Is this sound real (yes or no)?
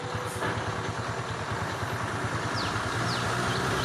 yes